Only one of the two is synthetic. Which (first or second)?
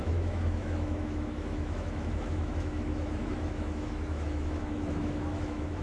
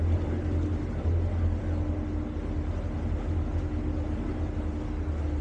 first